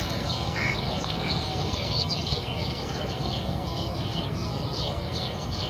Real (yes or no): no